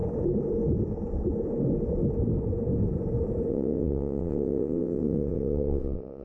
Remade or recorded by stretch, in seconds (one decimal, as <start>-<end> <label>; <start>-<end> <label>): 0.0-3.5 recorded; 3.5-6.2 remade